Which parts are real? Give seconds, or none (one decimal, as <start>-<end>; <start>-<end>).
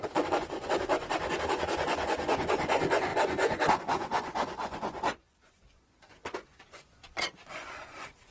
none